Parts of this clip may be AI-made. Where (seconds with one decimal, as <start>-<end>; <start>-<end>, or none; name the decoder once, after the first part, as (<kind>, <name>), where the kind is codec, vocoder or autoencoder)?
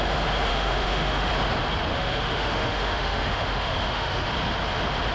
0.5-1.3 (autoencoder, DAC-VAE); 1.9-4.3